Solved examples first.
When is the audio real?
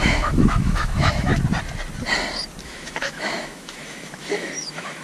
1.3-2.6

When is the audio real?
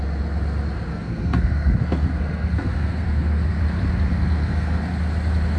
0.0-0.9; 3.6-4.1; 5.0-5.6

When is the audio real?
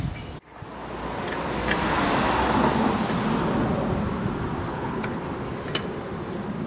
0.0-4.7; 5.2-6.7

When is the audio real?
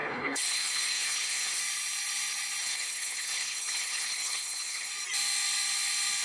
1.6-2.6; 4.9-6.2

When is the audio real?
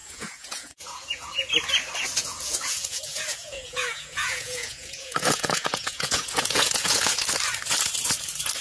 1.5-2.2; 7.1-8.6